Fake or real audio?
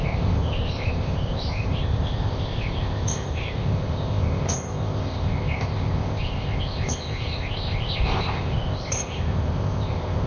fake